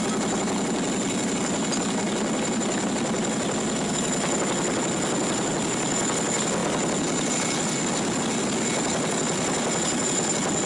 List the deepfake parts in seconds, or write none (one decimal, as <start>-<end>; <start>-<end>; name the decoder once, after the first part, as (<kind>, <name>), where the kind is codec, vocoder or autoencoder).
none